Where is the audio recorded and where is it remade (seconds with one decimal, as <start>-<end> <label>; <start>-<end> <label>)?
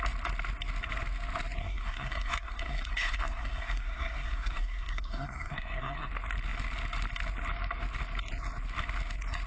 0.0-1.6 recorded; 1.6-6.1 remade; 6.1-9.5 recorded